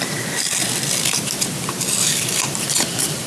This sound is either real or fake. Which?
real